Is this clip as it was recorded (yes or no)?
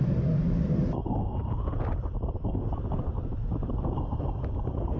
yes